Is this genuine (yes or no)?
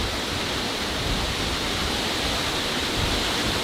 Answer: yes